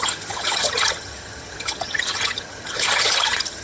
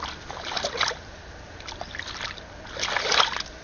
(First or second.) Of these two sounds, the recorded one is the second